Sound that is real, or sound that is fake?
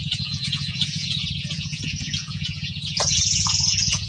fake